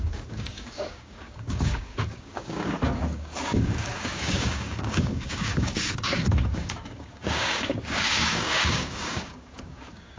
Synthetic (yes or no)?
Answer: yes